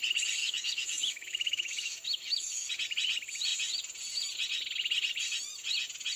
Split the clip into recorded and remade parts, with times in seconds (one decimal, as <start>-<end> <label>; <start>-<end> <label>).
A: 0.0-0.4 recorded; 0.4-2.7 remade; 2.7-6.2 recorded

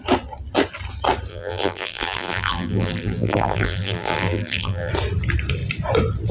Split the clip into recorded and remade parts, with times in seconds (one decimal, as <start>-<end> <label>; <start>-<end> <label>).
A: 0.0-1.3 recorded; 1.3-4.9 remade; 4.9-6.3 recorded

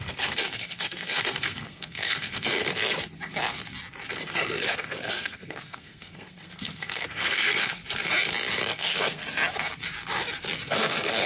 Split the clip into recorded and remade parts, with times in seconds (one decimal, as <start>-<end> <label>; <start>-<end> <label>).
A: 0.0-2.7 remade; 2.7-4.1 recorded; 4.1-7.8 remade; 7.8-8.7 recorded; 8.7-9.2 remade; 9.2-10.7 recorded; 10.7-11.3 remade

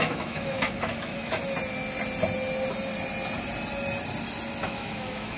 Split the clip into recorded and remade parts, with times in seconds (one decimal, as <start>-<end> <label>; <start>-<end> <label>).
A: 0.0-1.4 remade; 1.4-4.6 recorded; 4.6-5.4 remade